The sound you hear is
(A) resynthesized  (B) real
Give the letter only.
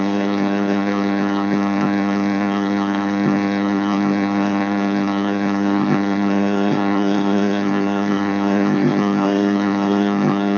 A